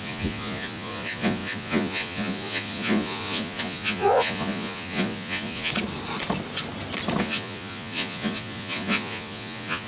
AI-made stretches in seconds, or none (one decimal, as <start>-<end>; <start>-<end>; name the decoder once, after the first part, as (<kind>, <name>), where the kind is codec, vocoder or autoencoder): 0.0-5.7 (vocoder, Vocos); 7.2-9.9